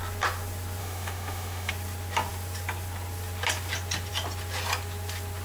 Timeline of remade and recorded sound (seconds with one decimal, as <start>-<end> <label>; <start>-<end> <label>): 0.0-0.8 recorded; 0.8-1.7 remade; 1.7-5.4 recorded